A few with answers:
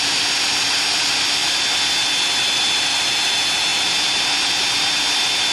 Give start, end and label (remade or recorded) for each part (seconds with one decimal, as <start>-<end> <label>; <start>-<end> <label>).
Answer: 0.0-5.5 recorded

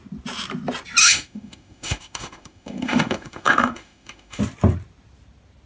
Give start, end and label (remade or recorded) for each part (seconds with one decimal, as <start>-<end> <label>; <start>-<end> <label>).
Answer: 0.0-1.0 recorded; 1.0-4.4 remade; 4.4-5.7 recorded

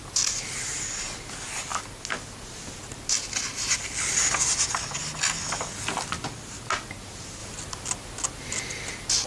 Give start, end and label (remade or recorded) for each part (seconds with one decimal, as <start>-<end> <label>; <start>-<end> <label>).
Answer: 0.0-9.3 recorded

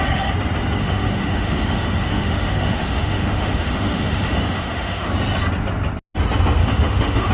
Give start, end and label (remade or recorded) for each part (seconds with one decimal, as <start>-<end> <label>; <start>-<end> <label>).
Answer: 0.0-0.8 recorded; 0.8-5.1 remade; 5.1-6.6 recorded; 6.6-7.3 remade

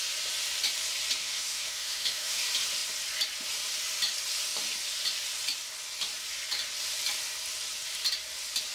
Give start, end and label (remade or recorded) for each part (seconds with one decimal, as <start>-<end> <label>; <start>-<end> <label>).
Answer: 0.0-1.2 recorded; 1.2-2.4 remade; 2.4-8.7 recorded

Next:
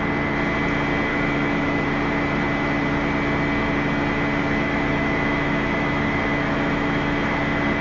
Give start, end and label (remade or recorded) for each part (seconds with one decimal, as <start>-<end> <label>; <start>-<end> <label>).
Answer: 0.0-1.1 recorded; 1.1-1.8 remade; 1.8-4.4 recorded; 4.4-7.8 remade